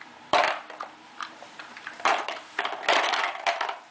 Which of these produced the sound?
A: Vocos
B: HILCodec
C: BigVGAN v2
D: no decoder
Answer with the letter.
C